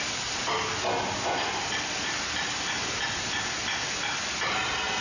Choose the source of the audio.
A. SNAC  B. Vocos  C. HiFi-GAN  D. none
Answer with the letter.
D